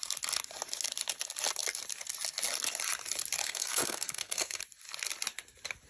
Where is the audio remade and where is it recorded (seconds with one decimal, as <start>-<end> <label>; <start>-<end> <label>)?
0.0-3.4 recorded; 3.4-4.6 remade; 4.6-5.9 recorded